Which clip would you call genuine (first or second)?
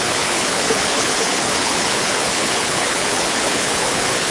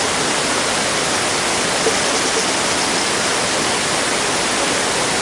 second